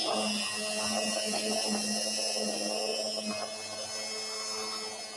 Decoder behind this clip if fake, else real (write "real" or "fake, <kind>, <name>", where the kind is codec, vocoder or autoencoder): real